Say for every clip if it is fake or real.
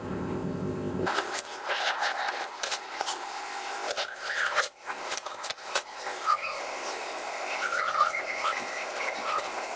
fake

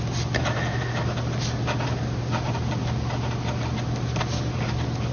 real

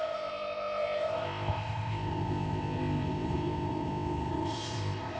fake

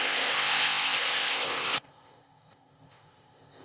fake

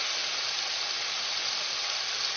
real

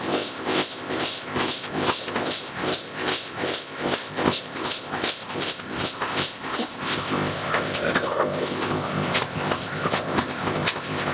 fake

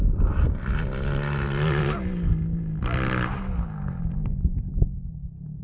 real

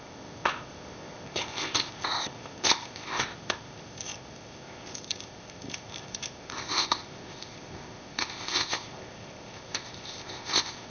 fake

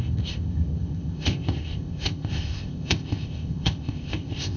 fake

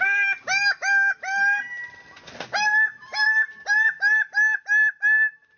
real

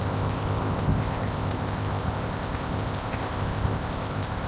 fake